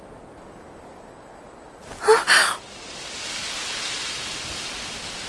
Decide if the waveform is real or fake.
real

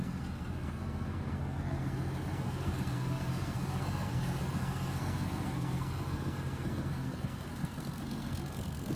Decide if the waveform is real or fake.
fake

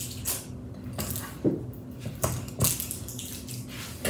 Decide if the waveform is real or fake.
real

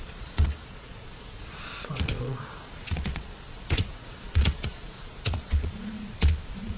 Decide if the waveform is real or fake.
fake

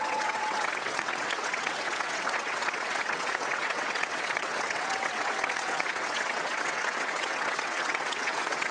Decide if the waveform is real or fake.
fake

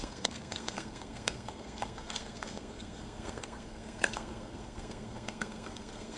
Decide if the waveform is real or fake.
fake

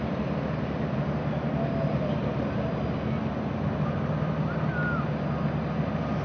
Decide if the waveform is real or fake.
real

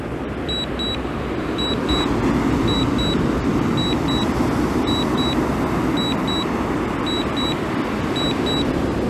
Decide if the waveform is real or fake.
real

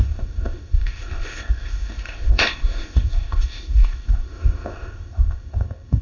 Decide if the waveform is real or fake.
fake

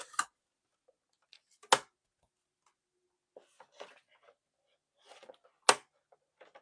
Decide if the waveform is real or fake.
real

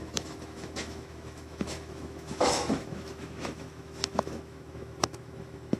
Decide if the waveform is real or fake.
fake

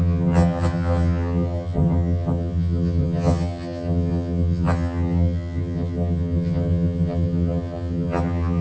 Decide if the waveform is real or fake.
fake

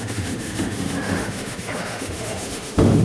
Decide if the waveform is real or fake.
fake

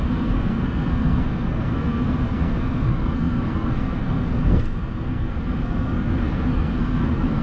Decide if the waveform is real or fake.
fake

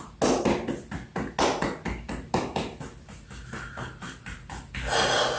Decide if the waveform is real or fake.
real